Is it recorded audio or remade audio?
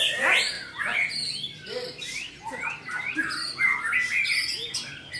recorded